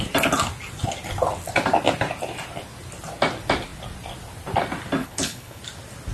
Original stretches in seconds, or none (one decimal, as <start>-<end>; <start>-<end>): 0.0-5.0; 5.6-6.1